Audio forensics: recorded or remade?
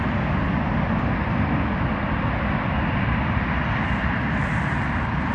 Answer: recorded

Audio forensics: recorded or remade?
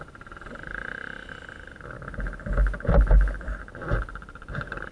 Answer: recorded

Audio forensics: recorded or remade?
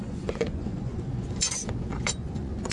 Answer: remade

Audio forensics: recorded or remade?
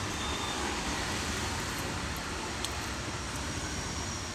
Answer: recorded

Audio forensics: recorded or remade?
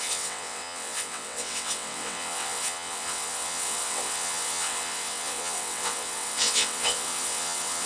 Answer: remade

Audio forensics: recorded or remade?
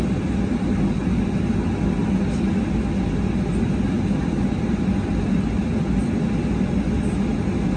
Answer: recorded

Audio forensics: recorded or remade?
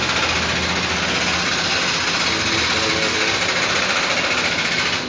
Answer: recorded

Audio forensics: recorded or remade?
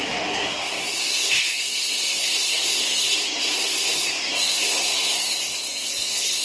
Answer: remade